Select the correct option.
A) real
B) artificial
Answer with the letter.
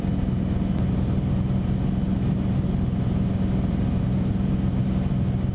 A